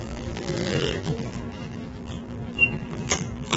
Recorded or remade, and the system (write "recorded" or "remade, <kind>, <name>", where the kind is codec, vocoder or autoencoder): remade, vocoder, BigVGAN v2